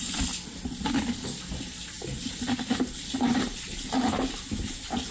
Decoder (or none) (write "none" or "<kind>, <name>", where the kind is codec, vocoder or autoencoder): none